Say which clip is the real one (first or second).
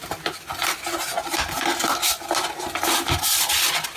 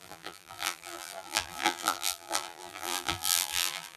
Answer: first